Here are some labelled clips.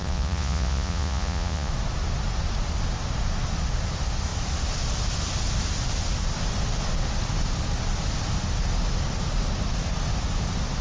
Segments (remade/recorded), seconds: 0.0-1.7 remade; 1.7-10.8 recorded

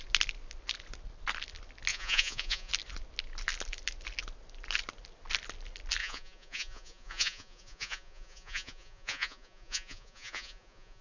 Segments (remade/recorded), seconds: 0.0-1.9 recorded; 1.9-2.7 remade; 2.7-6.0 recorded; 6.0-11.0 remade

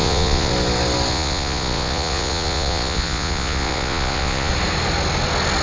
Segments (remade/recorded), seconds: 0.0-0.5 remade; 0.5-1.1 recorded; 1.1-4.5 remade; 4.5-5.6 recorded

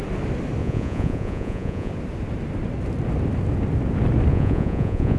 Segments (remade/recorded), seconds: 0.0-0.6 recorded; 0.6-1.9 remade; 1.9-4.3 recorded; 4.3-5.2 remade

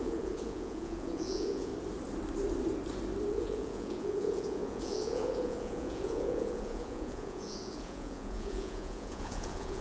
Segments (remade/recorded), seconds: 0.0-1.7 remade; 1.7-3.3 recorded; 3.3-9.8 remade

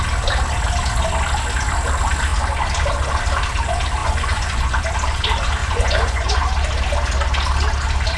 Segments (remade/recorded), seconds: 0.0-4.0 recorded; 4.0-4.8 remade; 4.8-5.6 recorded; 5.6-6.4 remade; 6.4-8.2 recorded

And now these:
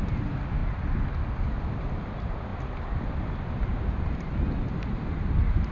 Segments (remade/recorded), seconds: 0.0-5.7 recorded